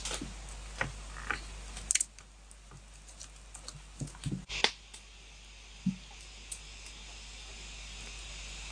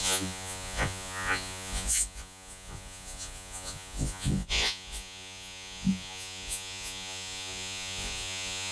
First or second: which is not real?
second